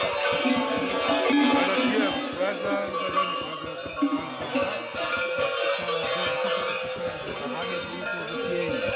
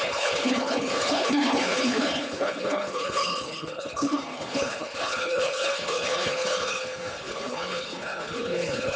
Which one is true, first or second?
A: first